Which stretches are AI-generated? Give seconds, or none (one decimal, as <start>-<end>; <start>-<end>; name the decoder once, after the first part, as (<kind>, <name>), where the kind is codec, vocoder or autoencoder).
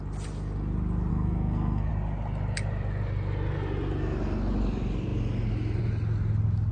1.1-1.9 (codec, SNAC)